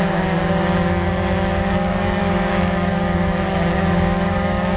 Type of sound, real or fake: fake